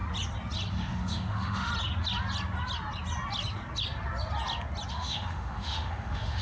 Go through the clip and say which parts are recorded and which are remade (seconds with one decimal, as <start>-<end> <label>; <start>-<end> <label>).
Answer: 0.0-0.7 recorded; 0.7-1.7 remade; 1.7-4.9 recorded; 4.9-6.4 remade